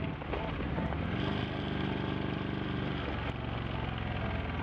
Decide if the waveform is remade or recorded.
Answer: recorded